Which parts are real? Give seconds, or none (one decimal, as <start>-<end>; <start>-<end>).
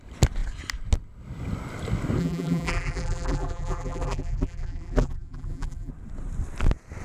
0.0-2.2; 5.9-7.0